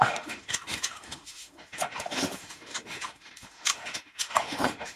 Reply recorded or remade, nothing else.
remade